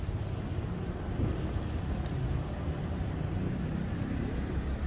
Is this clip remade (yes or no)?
no